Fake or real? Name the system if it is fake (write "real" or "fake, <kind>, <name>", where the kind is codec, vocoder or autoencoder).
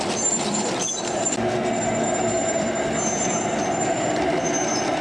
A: real